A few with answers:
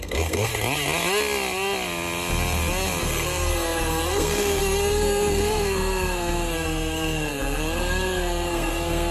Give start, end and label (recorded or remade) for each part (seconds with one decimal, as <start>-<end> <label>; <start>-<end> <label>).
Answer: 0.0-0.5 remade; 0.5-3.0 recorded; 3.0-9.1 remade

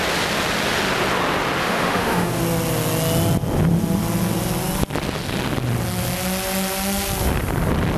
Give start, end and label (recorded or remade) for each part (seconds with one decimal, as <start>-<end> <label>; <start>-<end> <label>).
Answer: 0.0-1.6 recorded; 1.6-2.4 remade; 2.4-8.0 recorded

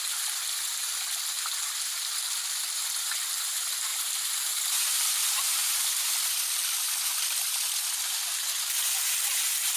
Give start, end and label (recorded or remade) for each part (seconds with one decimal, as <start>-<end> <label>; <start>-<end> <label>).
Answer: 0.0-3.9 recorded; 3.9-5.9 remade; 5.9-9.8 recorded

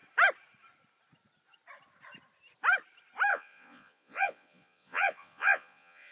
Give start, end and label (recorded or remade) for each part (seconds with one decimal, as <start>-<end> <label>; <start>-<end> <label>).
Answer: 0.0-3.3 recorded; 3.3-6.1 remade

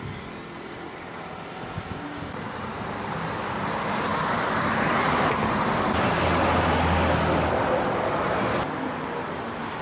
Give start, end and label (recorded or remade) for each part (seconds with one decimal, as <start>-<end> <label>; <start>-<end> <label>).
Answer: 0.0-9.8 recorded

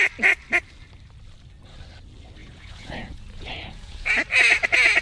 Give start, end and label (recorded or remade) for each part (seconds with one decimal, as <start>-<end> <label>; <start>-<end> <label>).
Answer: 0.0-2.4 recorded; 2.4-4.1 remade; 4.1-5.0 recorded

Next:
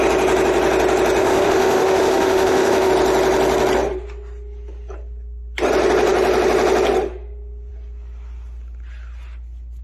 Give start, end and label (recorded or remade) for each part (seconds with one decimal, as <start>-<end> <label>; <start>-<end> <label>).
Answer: 0.0-1.2 recorded; 1.2-2.9 remade; 2.9-9.8 recorded

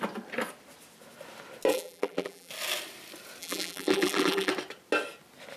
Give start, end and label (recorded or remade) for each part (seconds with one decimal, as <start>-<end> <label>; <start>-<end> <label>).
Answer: 0.0-1.7 recorded; 1.7-2.5 remade; 2.5-3.4 recorded; 3.4-4.5 remade; 4.5-5.6 recorded